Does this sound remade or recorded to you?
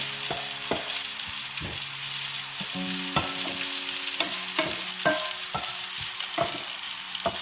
recorded